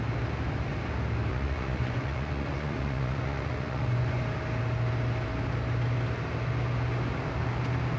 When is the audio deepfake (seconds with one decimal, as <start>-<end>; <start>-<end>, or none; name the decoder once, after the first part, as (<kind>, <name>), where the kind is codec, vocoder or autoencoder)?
1.3-4.2 (vocoder, Vocos)